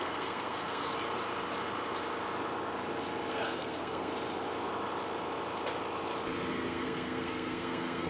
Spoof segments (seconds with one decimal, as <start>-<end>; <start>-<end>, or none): 0.0-0.9; 3.3-4.1; 6.5-8.1